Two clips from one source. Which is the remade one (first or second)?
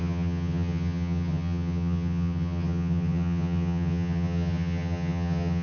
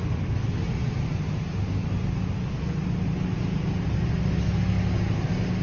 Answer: first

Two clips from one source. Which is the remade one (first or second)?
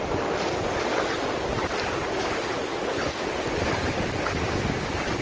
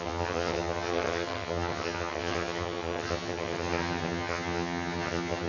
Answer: second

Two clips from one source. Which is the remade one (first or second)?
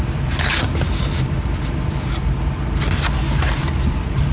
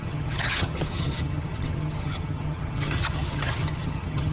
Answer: second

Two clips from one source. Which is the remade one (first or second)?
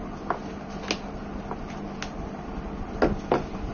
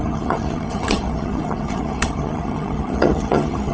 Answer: second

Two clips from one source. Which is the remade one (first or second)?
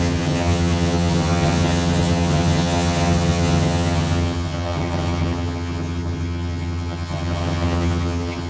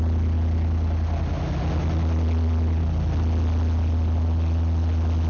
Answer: first